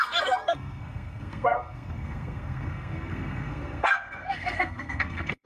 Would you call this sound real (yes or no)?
no